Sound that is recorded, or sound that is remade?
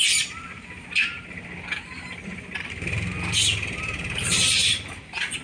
recorded